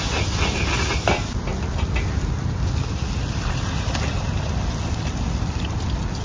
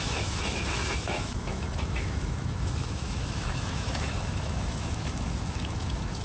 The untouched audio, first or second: first